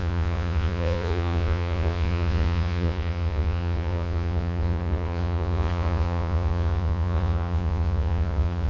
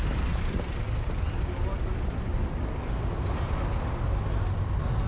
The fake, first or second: first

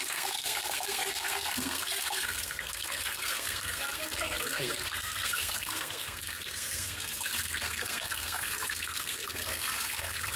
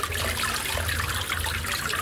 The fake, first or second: first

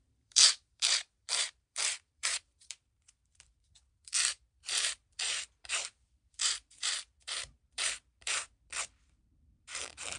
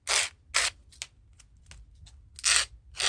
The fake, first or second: first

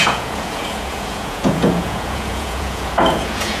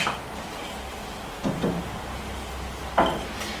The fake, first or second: first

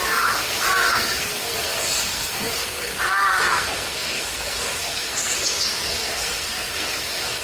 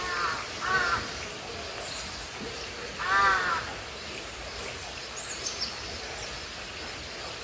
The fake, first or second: first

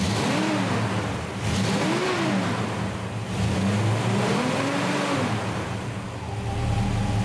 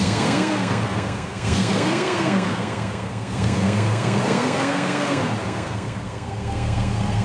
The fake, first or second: second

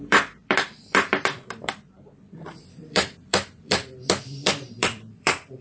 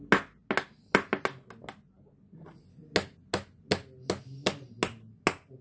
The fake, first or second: first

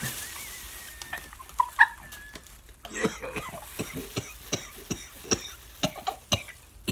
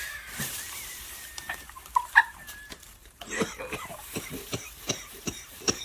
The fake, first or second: second